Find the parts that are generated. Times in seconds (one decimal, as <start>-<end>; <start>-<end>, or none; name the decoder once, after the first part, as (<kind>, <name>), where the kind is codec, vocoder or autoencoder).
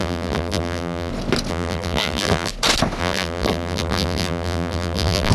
0.0-1.1 (vocoder, BigVGAN v2); 1.5-2.5; 3.0-5.3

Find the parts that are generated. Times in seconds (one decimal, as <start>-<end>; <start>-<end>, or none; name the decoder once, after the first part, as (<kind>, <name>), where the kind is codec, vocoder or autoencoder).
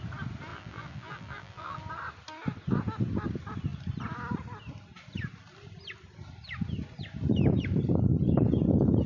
0.5-1.8 (vocoder, BigVGAN v2)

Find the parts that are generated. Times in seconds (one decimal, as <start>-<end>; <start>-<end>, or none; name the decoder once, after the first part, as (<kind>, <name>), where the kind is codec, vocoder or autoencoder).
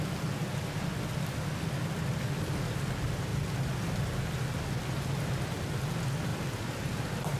6.3-7.4 (vocoder, BigVGAN v2)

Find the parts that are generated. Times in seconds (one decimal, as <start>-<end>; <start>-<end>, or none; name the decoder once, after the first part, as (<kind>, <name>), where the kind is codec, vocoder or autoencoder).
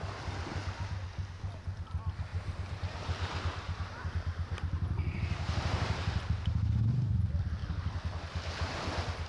2.3-6.2 (vocoder, BigVGAN v2)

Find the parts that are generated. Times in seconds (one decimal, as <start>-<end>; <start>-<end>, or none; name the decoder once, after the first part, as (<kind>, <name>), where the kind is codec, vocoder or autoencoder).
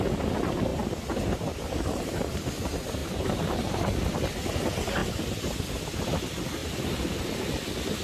0.7-2.5 (vocoder, BigVGAN v2); 3.0-3.7; 5.0-5.6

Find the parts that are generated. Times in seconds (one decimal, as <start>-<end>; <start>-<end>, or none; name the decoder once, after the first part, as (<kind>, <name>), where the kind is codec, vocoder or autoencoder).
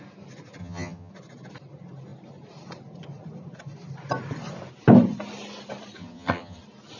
0.6-1.1 (vocoder, HiFi-GAN); 6.0-6.6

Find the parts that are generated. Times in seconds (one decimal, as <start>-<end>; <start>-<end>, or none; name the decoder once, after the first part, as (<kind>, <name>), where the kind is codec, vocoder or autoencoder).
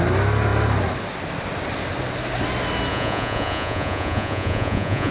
2.9-5.1 (vocoder, Vocos)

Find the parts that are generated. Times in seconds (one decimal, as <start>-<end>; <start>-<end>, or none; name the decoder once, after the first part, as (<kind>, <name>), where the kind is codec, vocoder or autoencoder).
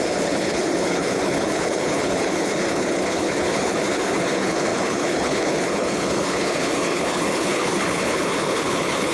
0.0-9.1 (codec, HILCodec)